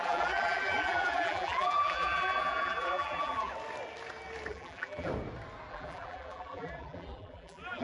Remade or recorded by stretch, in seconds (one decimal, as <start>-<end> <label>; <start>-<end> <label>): 0.0-3.5 remade; 3.5-4.5 recorded; 4.5-5.1 remade; 5.1-5.7 recorded; 5.7-7.8 remade

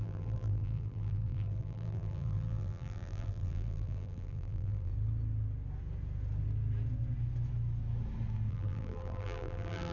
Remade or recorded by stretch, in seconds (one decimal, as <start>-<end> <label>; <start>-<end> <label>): 0.0-4.9 remade; 4.9-8.5 recorded; 8.5-9.9 remade

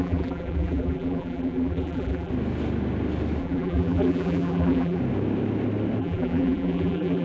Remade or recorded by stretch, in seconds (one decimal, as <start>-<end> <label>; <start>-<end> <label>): 0.0-2.3 remade; 2.3-3.4 recorded; 3.4-5.0 remade; 5.0-6.0 recorded; 6.0-7.2 remade

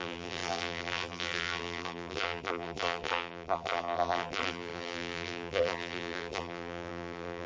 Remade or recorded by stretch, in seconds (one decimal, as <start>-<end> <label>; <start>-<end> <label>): 0.0-7.5 remade

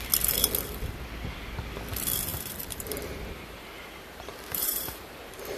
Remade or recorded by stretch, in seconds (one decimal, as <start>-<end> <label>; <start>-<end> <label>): 0.0-2.3 recorded; 2.3-5.6 remade

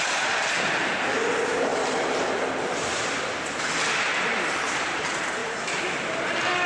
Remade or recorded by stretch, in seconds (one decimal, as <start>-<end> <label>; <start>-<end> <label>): 0.0-1.7 remade; 1.7-4.6 recorded; 4.6-6.7 remade